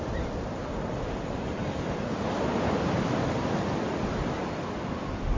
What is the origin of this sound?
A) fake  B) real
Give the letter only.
B